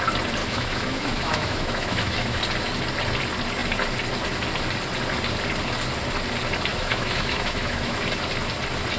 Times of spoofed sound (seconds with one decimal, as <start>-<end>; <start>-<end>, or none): 0.4-2.4; 6.7-8.0